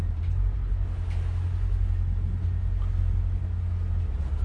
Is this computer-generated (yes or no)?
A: no